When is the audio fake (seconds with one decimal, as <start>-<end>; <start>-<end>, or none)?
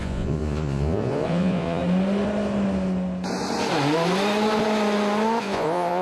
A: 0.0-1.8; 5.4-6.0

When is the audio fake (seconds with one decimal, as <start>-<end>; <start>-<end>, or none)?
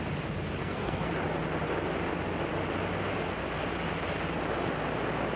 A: 0.6-1.1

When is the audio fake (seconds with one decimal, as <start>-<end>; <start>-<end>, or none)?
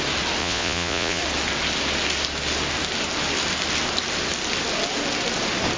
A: 0.4-1.2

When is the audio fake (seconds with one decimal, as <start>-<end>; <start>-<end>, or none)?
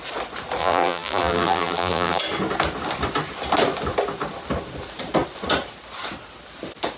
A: 0.6-2.2